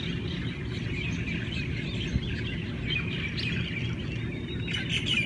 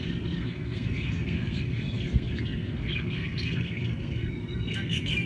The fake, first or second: second